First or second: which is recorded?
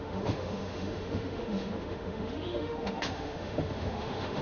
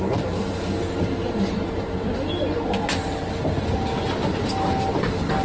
second